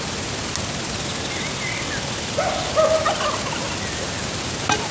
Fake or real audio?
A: real